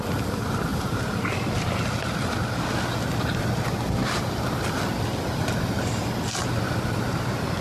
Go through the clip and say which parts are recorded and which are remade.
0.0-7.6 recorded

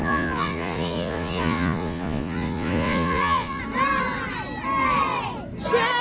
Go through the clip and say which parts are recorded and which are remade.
0.0-3.6 remade; 3.6-6.0 recorded